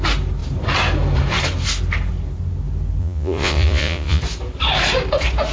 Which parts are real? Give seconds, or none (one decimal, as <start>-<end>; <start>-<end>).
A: 0.0-3.0; 4.2-5.5